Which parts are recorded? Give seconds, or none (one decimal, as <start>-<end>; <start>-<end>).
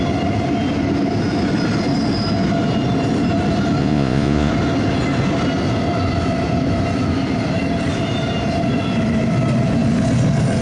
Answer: 0.0-3.8; 4.5-10.6